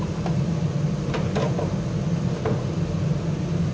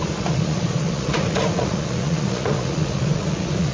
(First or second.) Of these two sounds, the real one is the first